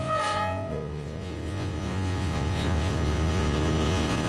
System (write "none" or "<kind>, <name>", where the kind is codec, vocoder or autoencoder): vocoder, Vocos